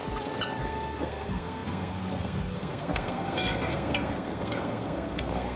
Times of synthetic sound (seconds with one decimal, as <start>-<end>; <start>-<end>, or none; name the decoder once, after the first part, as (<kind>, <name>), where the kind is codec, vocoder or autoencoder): 0.6-5.6 (codec, SNAC)